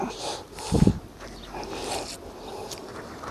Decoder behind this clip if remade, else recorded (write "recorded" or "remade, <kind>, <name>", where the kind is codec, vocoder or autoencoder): recorded